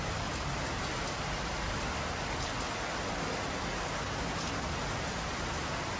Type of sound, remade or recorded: recorded